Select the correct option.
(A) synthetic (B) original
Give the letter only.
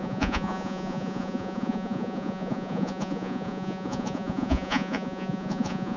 A